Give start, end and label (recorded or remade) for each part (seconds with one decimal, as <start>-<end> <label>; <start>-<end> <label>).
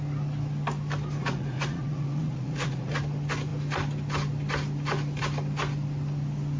0.0-1.2 recorded; 1.2-3.0 remade; 3.0-6.6 recorded